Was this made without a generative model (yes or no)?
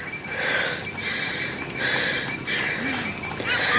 yes